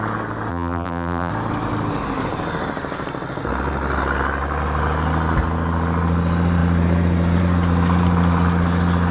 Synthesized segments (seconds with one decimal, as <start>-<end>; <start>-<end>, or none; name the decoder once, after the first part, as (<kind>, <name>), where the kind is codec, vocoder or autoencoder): 0.5-1.3 (vocoder, BigVGAN v2)